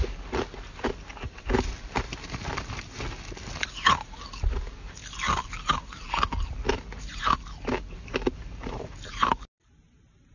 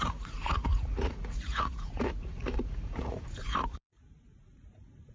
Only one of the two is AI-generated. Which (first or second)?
second